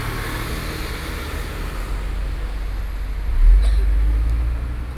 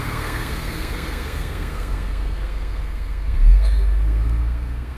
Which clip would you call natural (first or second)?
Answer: first